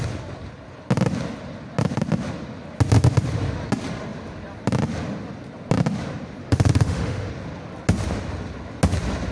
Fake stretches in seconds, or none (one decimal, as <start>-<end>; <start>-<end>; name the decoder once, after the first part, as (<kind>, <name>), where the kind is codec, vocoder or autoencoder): 6.4-7.3 (autoencoder, DAC-VAE)